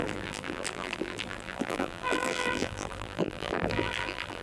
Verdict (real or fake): fake